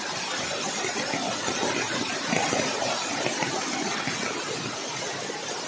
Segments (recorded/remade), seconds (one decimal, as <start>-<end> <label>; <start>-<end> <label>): 0.0-2.1 recorded; 2.1-2.9 remade; 2.9-5.7 recorded